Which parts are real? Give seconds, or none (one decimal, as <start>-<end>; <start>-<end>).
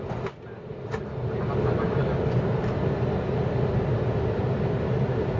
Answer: 0.0-5.4